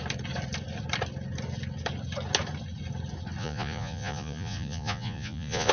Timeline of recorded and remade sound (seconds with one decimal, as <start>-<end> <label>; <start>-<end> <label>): 0.0-3.4 recorded; 3.4-5.7 remade